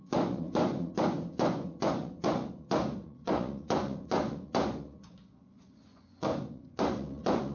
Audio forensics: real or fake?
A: fake